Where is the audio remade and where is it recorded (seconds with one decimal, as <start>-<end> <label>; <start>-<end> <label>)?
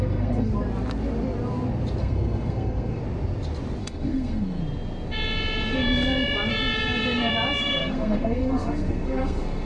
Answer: 0.0-0.5 remade; 0.5-2.0 recorded; 2.0-3.0 remade; 3.0-3.8 recorded; 3.8-4.6 remade; 4.6-7.6 recorded; 7.6-9.7 remade